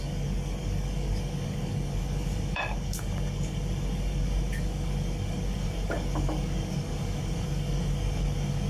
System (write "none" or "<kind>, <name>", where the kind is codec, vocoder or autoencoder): codec, DAC